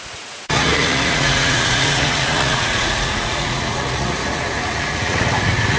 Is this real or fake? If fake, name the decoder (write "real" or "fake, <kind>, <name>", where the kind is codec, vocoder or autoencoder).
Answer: fake, vocoder, Vocos